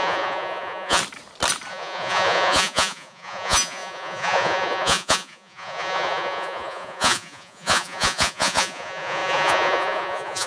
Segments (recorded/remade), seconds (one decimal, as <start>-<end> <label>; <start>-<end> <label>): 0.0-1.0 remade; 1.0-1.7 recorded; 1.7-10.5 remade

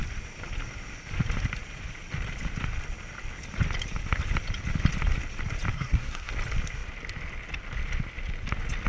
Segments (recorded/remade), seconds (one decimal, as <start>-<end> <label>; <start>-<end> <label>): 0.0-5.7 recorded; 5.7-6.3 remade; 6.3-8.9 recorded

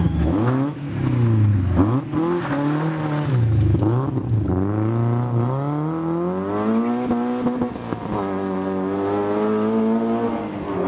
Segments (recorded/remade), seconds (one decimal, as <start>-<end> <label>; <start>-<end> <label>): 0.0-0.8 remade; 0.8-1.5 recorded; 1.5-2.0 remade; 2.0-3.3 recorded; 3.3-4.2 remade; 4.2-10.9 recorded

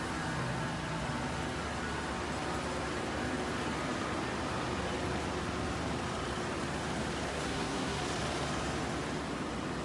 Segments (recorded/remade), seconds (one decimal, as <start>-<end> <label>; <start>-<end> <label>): 0.0-7.3 recorded; 7.3-8.0 remade; 8.0-9.8 recorded

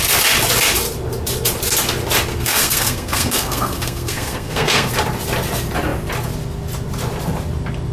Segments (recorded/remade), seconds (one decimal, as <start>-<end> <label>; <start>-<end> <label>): 0.0-2.3 recorded; 2.3-4.9 remade; 4.9-7.9 recorded

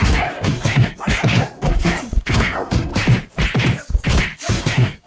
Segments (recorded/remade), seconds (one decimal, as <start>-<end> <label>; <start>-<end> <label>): 0.0-2.9 remade; 2.9-4.5 recorded; 4.5-5.1 remade

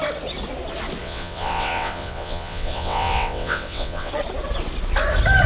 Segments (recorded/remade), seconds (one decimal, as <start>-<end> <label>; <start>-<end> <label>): 0.0-1.0 recorded; 1.0-4.1 remade; 4.1-5.5 recorded

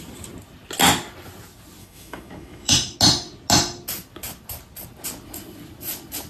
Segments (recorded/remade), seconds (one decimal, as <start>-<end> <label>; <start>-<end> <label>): 0.0-1.8 recorded; 1.8-2.7 remade; 2.7-6.3 recorded